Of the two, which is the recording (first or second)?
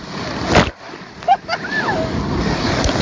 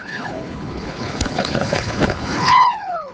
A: first